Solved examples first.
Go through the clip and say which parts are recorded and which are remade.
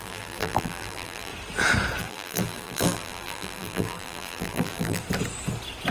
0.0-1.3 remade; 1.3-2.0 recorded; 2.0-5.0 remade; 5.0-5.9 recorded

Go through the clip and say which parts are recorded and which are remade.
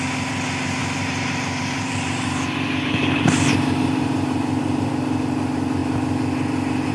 0.0-0.8 recorded; 0.8-4.9 remade; 4.9-6.9 recorded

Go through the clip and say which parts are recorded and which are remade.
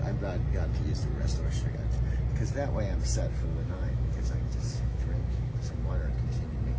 0.0-3.5 recorded; 3.5-5.9 remade; 5.9-6.8 recorded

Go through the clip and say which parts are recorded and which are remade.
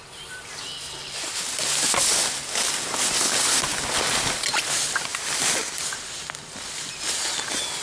0.0-7.8 recorded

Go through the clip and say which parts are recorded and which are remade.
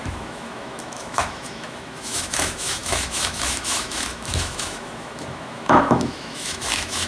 0.0-7.1 remade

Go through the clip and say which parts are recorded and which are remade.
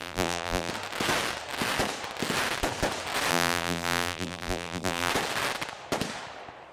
0.0-0.7 remade; 0.7-3.3 recorded; 3.3-5.1 remade; 5.1-6.7 recorded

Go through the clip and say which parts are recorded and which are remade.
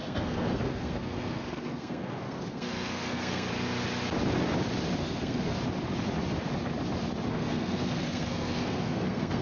0.0-3.5 remade; 3.5-5.0 recorded; 5.0-5.5 remade; 5.5-7.3 recorded; 7.3-9.4 remade